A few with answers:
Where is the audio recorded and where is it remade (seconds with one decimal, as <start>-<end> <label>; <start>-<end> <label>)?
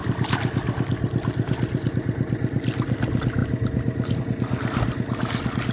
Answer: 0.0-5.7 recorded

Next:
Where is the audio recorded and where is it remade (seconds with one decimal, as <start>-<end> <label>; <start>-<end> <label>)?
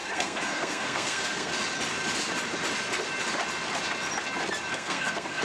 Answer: 0.0-1.5 remade; 1.5-4.7 recorded; 4.7-5.4 remade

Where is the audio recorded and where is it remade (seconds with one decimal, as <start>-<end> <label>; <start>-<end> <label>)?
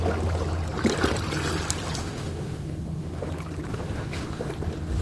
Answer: 0.0-2.0 recorded; 2.0-3.3 remade; 3.3-3.7 recorded; 3.7-4.5 remade; 4.5-5.0 recorded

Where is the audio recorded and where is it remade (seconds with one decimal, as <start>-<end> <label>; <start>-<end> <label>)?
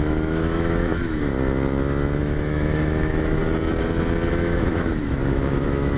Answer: 0.0-1.3 remade; 1.3-2.2 recorded; 2.2-3.4 remade; 3.4-4.3 recorded; 4.3-6.0 remade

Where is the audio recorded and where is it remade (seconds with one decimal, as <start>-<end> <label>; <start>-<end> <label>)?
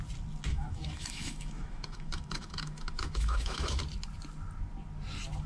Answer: 0.0-0.5 recorded; 0.5-3.8 remade; 3.8-5.5 recorded